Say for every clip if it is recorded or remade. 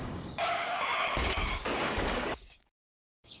remade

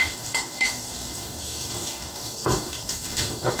remade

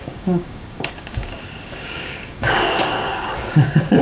remade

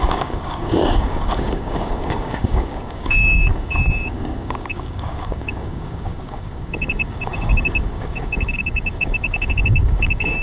remade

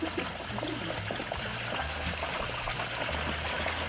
recorded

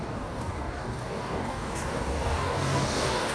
remade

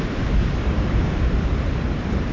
recorded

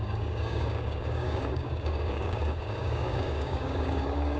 remade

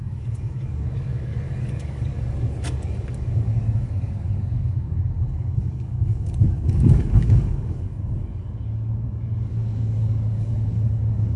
remade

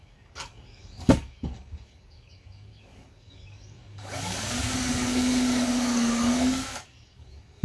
remade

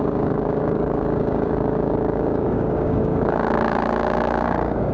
remade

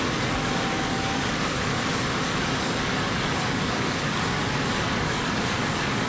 remade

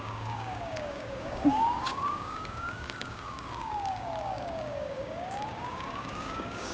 remade